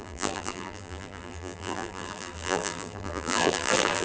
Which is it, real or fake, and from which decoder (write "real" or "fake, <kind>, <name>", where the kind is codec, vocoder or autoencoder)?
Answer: fake, vocoder, BigVGAN v2